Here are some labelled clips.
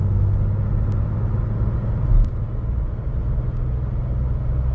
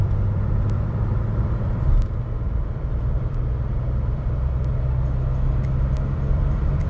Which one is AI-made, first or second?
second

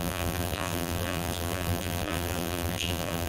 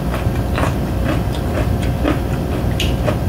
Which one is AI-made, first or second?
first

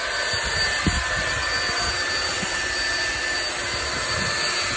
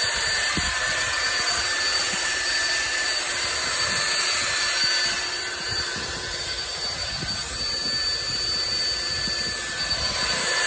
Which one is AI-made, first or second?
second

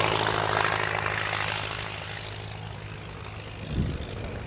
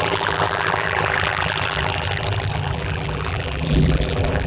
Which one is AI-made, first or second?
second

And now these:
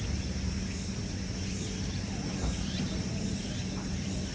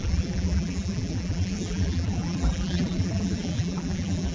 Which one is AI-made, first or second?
second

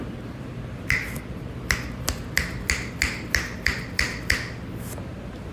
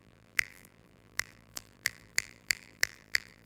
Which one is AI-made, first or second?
second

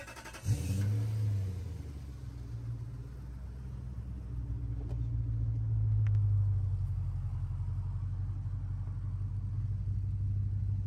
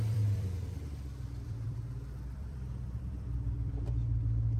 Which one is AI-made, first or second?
second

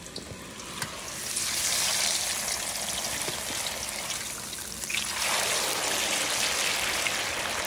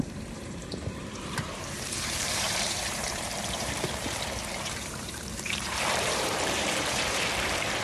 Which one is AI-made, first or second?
second